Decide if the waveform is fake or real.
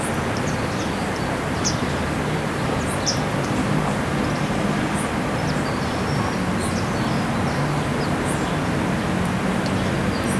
real